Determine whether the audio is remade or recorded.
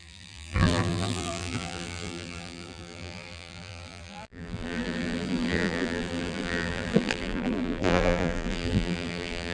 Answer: remade